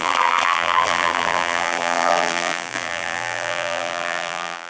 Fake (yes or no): yes